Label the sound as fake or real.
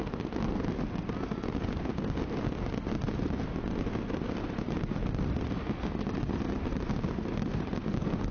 real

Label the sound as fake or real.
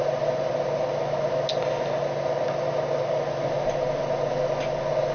real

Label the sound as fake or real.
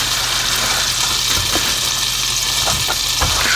real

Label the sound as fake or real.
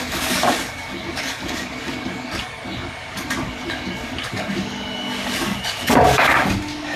fake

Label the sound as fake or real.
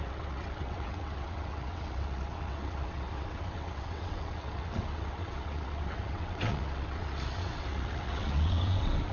fake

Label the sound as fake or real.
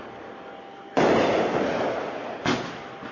real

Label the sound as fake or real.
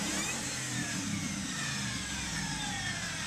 fake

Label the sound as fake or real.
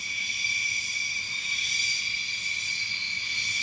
real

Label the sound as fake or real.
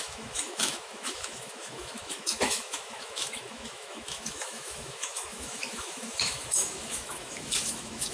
fake